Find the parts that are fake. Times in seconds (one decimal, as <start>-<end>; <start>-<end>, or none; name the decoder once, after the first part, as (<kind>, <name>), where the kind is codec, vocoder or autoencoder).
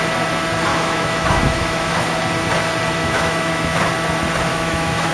0.7-2.2 (autoencoder, DAC-VAE); 3.0-3.9; 4.5-5.1